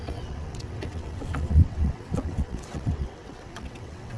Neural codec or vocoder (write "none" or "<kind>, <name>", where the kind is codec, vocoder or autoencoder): vocoder, WaveNeXt